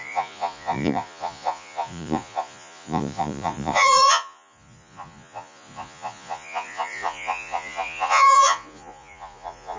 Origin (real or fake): fake